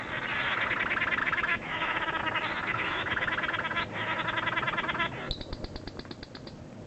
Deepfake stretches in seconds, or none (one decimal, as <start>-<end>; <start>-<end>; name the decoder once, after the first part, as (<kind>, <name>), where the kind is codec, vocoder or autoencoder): 1.2-2.2 (autoencoder, DAC-VAE); 2.7-3.3